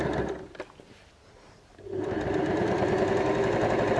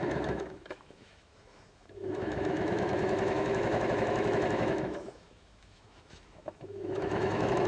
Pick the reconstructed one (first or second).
second